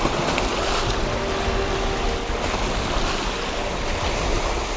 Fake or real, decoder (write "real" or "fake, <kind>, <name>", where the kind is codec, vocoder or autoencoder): real